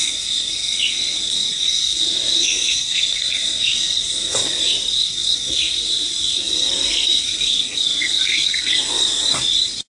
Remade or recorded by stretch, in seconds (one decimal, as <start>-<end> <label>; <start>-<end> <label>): 0.0-4.6 remade; 4.6-5.0 recorded; 5.0-9.2 remade; 9.2-10.0 recorded